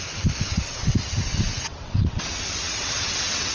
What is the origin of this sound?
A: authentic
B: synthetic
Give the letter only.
B